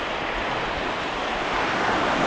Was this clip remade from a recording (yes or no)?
no